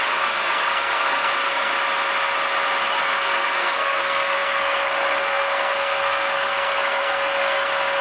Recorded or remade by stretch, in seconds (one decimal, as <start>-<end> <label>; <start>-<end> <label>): 0.0-1.7 remade; 1.7-3.0 recorded; 3.0-8.0 remade